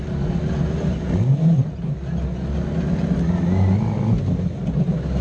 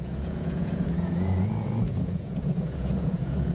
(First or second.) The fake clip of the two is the second